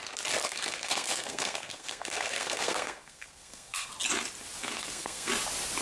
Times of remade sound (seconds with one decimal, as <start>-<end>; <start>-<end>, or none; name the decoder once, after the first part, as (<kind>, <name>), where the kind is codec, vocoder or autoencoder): 0.4-3.9 (codec, SNAC); 4.6-5.3